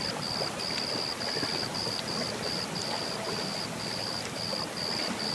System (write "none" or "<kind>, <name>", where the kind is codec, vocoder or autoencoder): none